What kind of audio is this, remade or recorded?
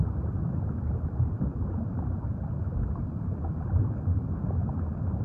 recorded